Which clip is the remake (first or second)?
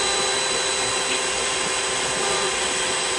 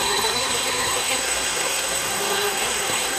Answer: second